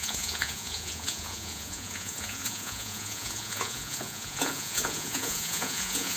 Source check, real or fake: fake